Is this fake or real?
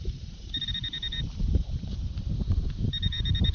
fake